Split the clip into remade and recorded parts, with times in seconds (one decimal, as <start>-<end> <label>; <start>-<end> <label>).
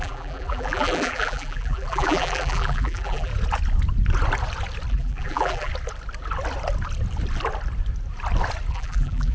0.0-3.3 remade; 3.3-4.9 recorded; 4.9-5.7 remade; 5.7-8.7 recorded; 8.7-9.3 remade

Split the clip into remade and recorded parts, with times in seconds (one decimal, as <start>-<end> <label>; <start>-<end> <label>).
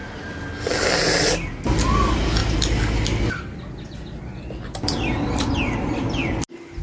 0.0-0.5 remade; 0.5-6.8 recorded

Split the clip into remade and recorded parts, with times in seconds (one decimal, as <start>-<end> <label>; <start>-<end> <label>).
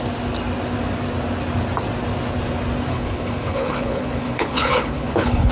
0.0-2.9 recorded; 2.9-5.5 remade